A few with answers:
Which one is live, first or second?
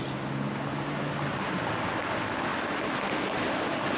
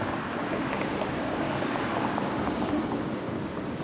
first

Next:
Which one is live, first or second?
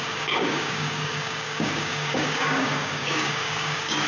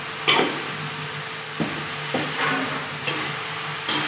second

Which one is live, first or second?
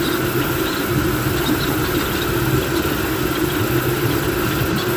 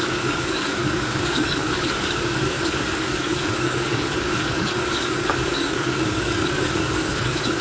first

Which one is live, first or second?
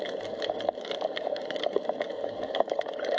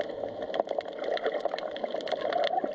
second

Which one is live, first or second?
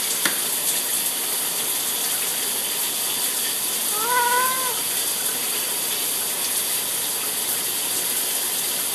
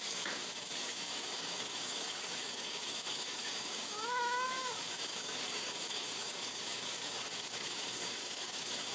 first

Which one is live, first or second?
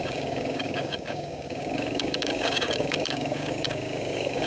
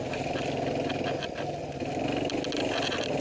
second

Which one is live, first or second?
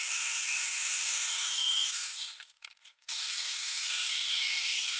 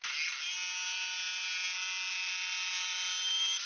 second